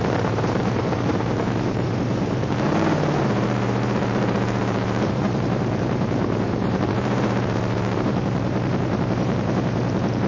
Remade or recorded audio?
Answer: remade